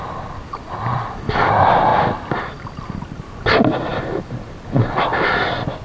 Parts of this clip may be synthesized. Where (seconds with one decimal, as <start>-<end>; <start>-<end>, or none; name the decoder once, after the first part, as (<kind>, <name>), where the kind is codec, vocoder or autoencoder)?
none